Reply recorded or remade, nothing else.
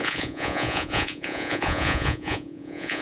remade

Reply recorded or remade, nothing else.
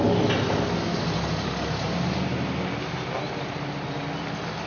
recorded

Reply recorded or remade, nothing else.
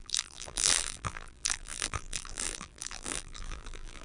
remade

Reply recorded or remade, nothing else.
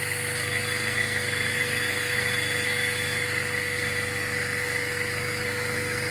remade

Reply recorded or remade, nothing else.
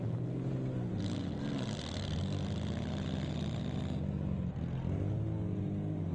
recorded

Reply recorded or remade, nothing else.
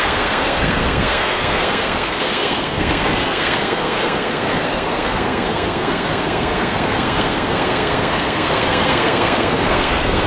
remade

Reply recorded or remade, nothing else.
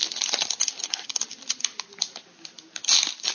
recorded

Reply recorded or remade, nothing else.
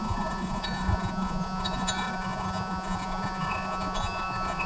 remade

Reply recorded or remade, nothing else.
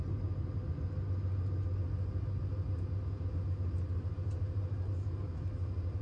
recorded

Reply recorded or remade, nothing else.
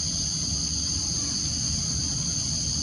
recorded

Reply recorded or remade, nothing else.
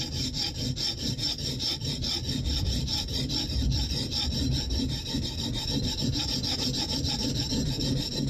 recorded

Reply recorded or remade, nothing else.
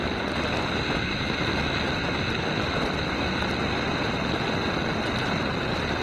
recorded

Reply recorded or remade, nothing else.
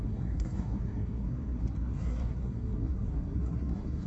remade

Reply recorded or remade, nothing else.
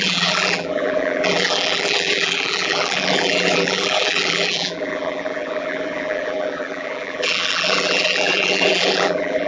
remade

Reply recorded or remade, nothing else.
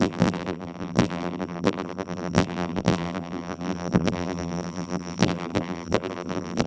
remade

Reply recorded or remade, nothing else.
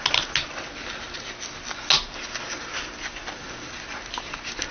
recorded